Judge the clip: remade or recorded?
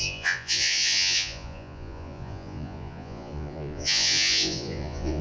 remade